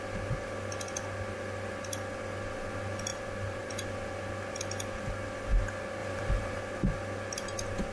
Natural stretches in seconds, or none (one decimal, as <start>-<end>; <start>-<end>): 0.0-3.1; 3.7-6.0; 6.6-7.9